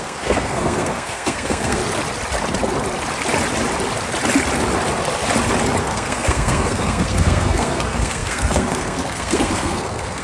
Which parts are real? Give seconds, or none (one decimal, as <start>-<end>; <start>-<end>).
1.8-5.8